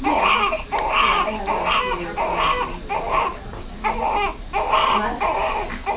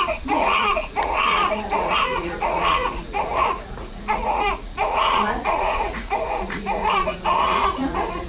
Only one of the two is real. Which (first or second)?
first